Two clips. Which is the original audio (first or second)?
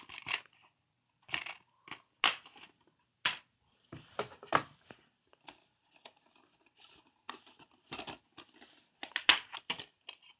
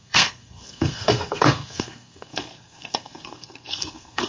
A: first